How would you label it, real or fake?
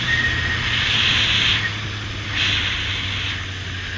real